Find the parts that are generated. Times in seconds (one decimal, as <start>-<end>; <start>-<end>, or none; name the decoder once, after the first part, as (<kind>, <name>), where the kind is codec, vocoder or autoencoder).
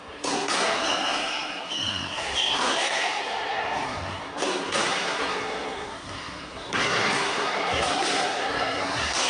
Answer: 0.0-9.3 (codec, SNAC)